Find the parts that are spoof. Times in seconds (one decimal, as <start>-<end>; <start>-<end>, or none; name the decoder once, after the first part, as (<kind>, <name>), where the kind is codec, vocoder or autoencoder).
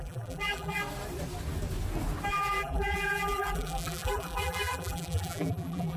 0.0-0.8 (vocoder, BigVGAN v2); 2.3-6.0